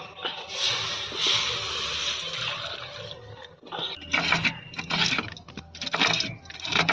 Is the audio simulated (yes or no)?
no